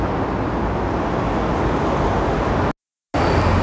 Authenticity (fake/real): real